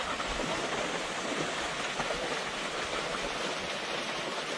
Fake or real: fake